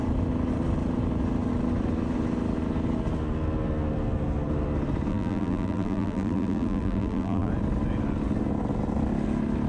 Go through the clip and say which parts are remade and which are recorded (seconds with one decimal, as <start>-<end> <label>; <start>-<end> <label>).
0.0-5.1 recorded; 5.1-7.5 remade; 7.5-9.7 recorded